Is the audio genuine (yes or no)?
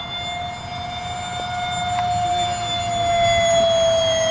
yes